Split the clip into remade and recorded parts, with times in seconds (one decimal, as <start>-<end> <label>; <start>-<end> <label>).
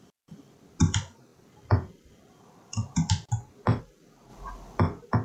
0.0-5.2 recorded